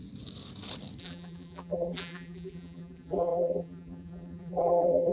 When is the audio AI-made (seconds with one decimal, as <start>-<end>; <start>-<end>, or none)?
1.0-5.1